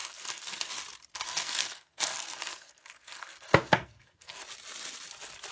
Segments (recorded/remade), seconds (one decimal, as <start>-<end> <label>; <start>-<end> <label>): 0.0-0.7 remade; 0.7-1.1 recorded; 1.1-4.4 remade; 4.4-5.5 recorded